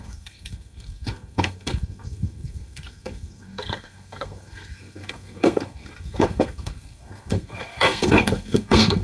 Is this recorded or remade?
remade